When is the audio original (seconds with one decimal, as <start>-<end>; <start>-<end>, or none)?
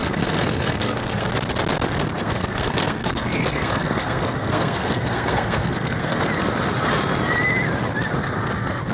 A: 1.3-2.2; 6.2-8.9